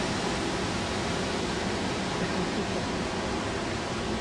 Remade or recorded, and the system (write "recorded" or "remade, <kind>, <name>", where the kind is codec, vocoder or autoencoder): recorded